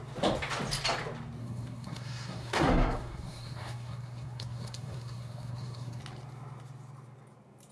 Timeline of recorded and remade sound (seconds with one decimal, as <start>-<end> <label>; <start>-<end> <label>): 0.0-1.4 recorded; 1.4-6.0 remade; 6.0-7.7 recorded